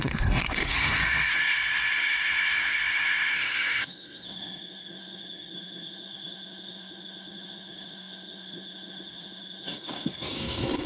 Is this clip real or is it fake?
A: fake